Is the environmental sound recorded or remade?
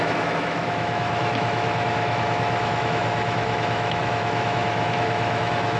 remade